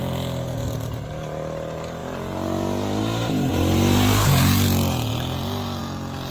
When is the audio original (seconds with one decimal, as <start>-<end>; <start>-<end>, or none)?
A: 0.0-6.3